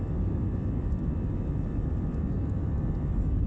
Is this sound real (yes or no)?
yes